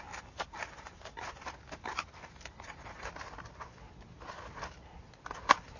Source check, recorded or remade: recorded